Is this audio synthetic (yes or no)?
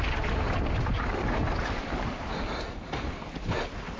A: no